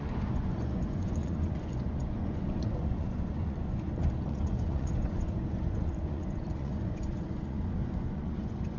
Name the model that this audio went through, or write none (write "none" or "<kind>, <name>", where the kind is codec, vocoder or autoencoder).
vocoder, Vocos